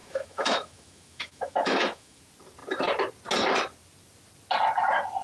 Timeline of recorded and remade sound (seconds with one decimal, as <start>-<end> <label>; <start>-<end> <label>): 0.0-2.2 remade; 2.2-5.2 recorded